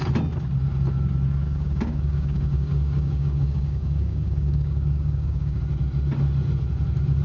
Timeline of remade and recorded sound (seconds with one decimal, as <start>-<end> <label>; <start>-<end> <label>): 0.0-1.4 recorded; 1.4-5.6 remade; 5.6-7.2 recorded